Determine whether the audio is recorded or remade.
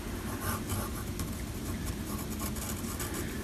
recorded